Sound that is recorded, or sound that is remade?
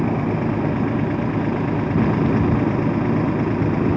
recorded